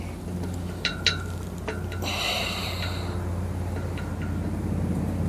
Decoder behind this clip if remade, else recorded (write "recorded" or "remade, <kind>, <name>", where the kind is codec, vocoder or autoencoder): remade, vocoder, BigVGAN v2